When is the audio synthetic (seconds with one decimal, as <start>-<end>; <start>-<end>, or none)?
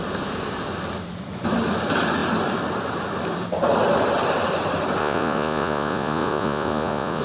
5.0-7.2